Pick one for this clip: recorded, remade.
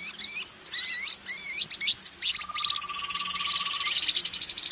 recorded